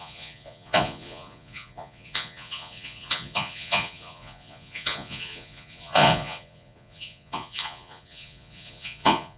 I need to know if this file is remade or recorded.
remade